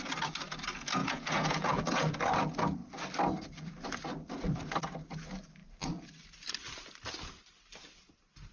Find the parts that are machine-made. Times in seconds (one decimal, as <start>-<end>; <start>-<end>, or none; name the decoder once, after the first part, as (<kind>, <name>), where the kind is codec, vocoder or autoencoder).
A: 1.0-2.2 (vocoder, Vocos)